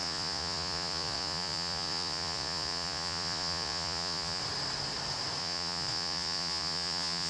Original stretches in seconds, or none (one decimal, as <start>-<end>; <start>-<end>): 4.4-5.4